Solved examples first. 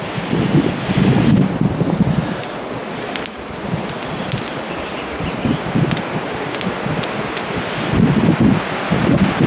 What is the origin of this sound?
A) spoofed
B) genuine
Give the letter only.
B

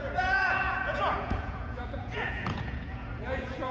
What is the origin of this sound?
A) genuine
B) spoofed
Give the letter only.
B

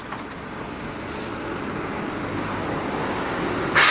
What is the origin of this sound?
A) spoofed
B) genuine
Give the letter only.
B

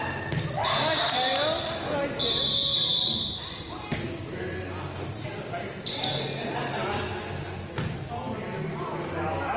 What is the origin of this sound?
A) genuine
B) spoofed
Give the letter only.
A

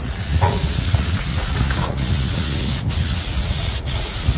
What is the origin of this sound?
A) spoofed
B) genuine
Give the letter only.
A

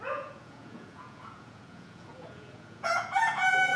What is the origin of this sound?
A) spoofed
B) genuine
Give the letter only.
A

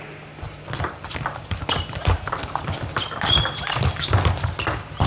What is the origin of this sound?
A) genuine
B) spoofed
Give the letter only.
A